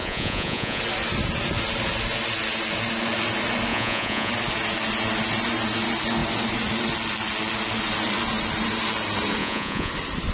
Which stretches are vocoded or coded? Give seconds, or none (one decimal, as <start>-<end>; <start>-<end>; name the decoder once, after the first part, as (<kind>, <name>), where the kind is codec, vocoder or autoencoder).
0.0-0.8 (vocoder, Vocos); 3.7-4.3; 9.4-9.9